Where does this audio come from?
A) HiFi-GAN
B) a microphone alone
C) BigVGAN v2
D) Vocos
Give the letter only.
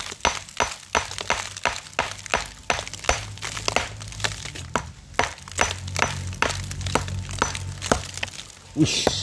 B